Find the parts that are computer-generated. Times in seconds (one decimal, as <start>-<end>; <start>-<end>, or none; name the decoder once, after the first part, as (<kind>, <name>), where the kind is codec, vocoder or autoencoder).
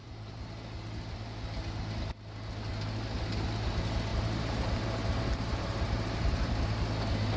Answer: 0.0-0.5 (vocoder, BigVGAN v2); 4.1-6.5